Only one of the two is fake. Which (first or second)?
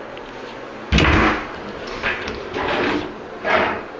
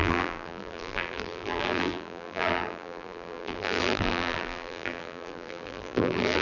second